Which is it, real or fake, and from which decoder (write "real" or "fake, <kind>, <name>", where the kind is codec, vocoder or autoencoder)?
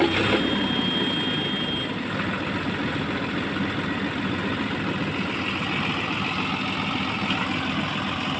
real